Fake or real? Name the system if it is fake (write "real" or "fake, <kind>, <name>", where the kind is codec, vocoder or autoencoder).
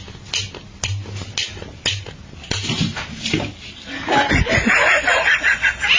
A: real